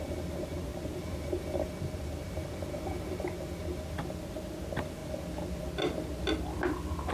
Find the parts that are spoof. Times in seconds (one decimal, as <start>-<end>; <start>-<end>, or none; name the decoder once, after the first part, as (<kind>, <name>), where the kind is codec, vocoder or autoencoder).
none